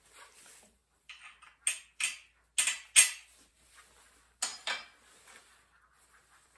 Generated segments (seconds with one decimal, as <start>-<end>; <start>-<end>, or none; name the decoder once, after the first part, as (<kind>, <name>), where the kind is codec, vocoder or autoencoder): none